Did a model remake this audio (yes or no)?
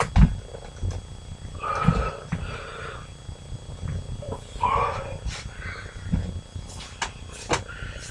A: no